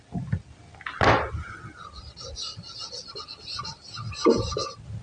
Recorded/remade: recorded